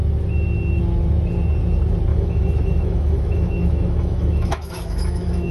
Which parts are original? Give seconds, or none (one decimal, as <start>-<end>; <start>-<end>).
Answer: 0.0-2.1